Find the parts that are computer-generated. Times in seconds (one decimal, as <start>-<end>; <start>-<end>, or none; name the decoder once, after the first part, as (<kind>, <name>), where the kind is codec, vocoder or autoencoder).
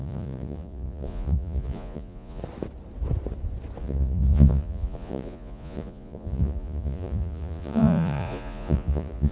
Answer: 0.0-2.4 (vocoder, Vocos); 3.8-9.3